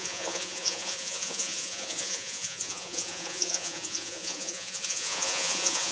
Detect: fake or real fake